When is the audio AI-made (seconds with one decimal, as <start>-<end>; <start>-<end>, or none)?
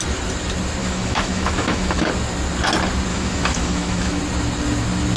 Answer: 0.8-2.1; 3.1-4.2